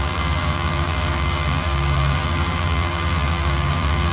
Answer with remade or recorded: remade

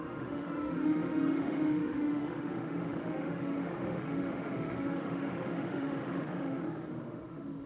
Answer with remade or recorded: remade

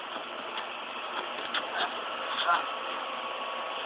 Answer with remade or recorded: recorded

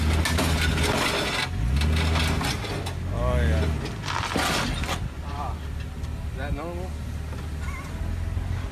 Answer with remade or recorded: recorded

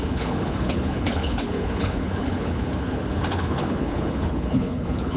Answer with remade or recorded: remade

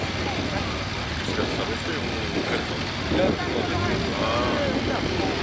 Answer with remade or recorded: recorded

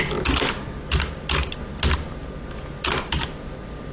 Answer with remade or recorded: recorded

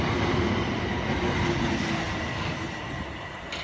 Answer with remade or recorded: recorded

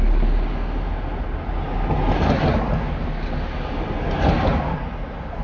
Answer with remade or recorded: recorded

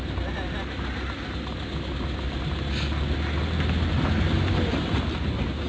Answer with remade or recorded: recorded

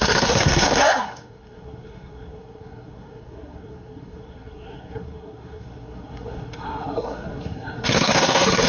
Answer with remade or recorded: remade